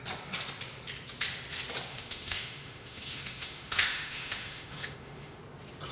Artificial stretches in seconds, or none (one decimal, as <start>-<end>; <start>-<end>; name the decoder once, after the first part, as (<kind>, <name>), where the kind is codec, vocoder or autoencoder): 1.9-5.4 (autoencoder, DAC-VAE)